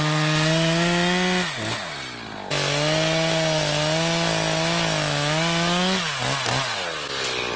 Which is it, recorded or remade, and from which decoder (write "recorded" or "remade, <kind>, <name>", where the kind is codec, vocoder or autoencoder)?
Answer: recorded